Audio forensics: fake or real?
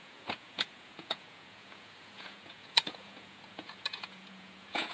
fake